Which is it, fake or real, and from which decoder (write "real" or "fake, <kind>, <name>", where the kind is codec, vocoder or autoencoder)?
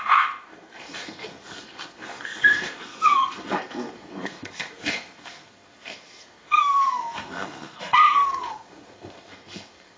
fake, codec, SNAC